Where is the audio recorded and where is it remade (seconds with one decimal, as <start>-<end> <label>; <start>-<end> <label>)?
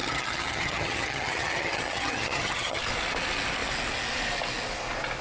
0.0-2.8 remade; 2.8-5.2 recorded